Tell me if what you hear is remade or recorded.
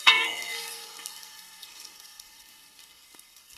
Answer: remade